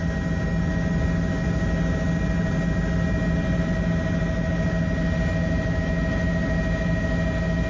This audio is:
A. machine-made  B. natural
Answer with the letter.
B